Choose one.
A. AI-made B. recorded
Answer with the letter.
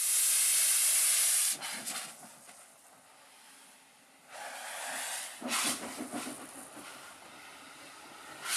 B